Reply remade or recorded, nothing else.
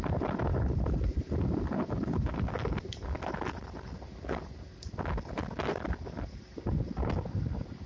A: recorded